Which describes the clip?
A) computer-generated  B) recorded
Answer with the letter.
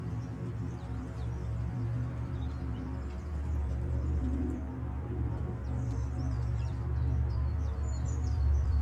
A